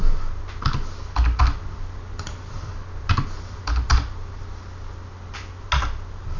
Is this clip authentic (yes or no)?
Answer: yes